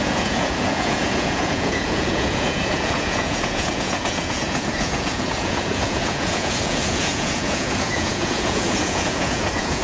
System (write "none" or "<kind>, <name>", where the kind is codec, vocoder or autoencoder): vocoder, Vocos